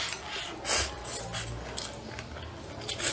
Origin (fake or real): real